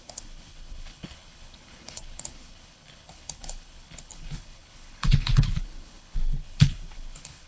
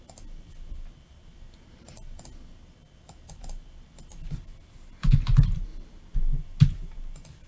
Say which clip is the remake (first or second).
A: first